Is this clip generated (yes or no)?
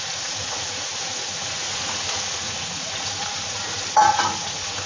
yes